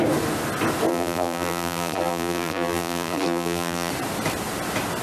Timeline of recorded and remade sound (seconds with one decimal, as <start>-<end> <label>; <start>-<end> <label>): 0.0-0.9 recorded; 0.9-3.9 remade; 3.9-5.0 recorded